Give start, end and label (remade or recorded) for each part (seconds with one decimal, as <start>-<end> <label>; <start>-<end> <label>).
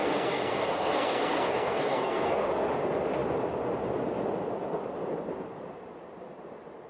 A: 0.0-2.5 remade; 2.5-6.9 recorded